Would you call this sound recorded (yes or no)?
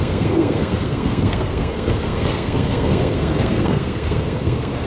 no